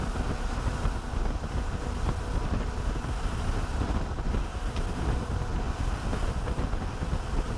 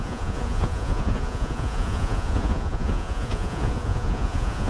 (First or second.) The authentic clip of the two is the first